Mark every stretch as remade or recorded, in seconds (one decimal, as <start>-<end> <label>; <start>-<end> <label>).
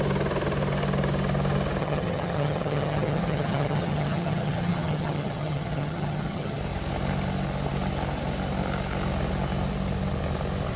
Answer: 0.0-1.8 recorded; 1.8-6.6 remade; 6.6-10.8 recorded